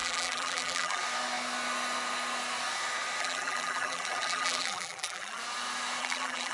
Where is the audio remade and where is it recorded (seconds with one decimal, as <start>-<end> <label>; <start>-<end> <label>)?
0.0-1.0 remade; 1.0-3.2 recorded; 3.2-5.4 remade; 5.4-6.0 recorded; 6.0-6.5 remade

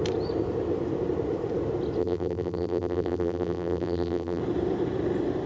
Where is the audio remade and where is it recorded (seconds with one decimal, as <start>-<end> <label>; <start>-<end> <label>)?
0.0-2.0 recorded; 2.0-4.4 remade; 4.4-5.5 recorded

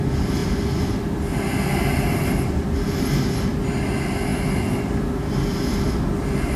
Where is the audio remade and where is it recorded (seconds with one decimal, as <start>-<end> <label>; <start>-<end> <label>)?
0.0-0.4 recorded; 0.4-1.7 remade; 1.7-6.6 recorded

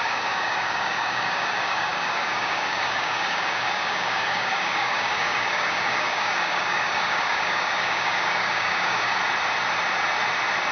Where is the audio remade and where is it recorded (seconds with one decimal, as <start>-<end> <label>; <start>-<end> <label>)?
0.0-9.2 remade; 9.2-10.7 recorded

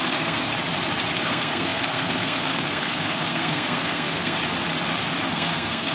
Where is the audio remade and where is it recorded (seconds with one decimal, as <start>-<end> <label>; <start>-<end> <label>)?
0.0-0.5 remade; 0.5-1.2 recorded; 1.2-4.4 remade; 4.4-5.3 recorded; 5.3-5.9 remade

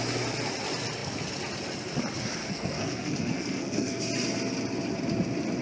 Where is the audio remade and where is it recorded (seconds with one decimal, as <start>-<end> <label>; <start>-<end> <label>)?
0.0-2.4 recorded; 2.4-4.0 remade; 4.0-5.6 recorded

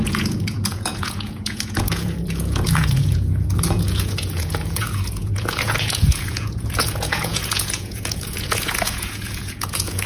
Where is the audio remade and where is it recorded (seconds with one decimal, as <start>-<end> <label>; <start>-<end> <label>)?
0.0-10.1 remade

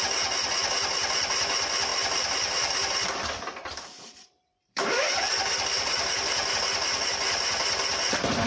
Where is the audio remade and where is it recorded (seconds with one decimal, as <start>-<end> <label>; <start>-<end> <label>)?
0.0-1.9 recorded; 1.9-6.5 remade; 6.5-8.5 recorded